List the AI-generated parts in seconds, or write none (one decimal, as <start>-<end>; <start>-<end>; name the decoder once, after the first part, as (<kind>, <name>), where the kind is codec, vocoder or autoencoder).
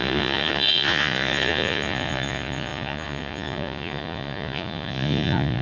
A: 0.0-5.6 (vocoder, Vocos)